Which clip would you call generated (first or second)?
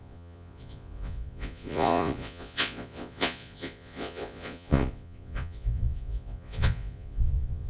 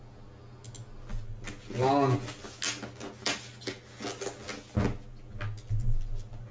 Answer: first